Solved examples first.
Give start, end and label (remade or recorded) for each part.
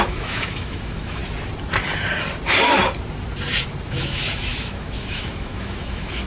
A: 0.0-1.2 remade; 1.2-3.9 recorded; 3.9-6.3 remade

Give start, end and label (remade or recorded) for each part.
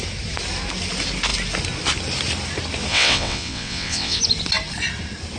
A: 0.0-2.9 recorded; 2.9-4.2 remade; 4.2-5.4 recorded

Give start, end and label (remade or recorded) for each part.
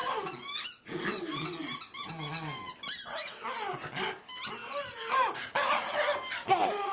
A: 0.0-6.9 recorded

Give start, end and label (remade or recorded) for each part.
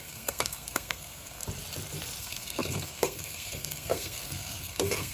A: 0.0-1.4 remade; 1.4-2.2 recorded; 2.2-5.1 remade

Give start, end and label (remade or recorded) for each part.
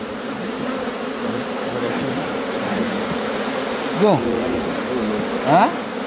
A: 0.0-2.1 recorded; 2.1-4.9 remade; 4.9-6.1 recorded